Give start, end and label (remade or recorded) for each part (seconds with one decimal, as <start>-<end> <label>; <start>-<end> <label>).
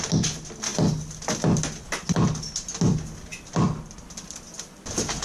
0.0-5.2 recorded